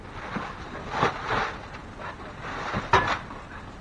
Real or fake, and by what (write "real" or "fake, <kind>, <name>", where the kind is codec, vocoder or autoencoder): real